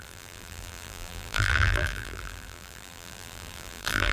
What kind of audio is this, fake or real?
fake